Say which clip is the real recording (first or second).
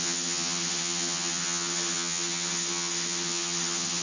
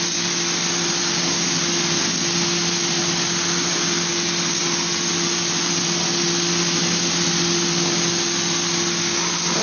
second